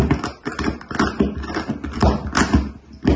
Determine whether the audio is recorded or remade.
recorded